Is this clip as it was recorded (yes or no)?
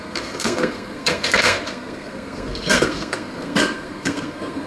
no